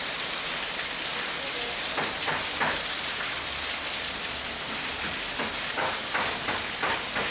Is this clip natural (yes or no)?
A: yes